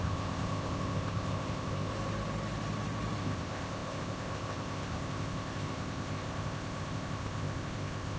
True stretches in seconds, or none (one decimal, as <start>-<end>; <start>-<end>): 1.9-3.2